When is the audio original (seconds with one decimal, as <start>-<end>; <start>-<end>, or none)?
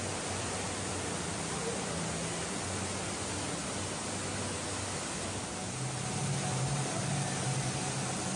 0.0-8.4